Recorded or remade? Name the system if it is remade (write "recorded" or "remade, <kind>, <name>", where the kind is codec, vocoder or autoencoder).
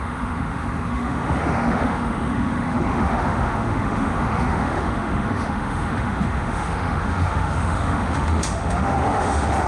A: remade, autoencoder, DAC-VAE